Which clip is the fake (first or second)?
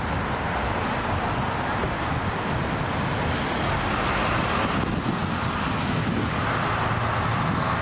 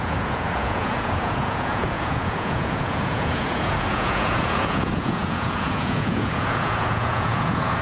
second